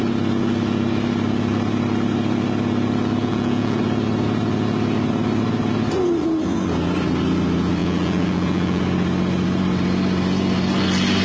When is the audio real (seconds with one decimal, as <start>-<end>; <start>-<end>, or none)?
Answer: 0.0-3.2; 3.8-7.8; 8.8-11.2